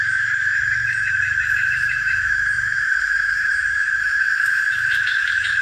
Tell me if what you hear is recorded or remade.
remade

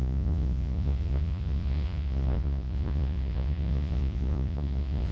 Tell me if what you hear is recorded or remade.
remade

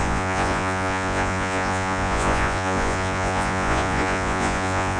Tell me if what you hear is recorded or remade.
remade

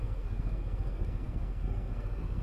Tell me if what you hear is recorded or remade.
remade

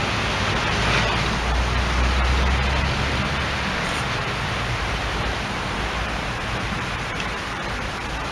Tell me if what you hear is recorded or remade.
recorded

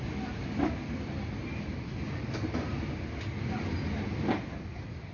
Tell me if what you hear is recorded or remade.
recorded